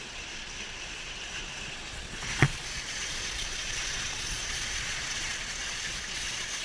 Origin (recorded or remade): remade